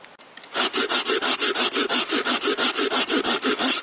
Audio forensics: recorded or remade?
recorded